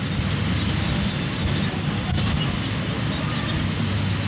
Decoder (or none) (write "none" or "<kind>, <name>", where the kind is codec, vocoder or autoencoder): none